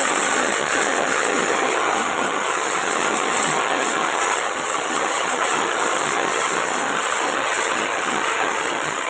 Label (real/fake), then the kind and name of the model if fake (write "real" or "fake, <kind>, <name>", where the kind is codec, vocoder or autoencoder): fake, vocoder, HiFi-GAN